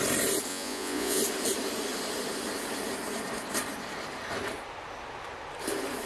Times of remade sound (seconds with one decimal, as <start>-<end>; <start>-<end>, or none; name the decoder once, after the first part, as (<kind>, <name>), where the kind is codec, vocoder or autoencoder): 0.5-1.2 (vocoder, Vocos)